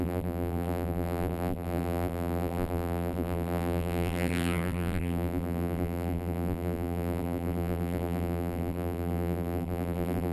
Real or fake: fake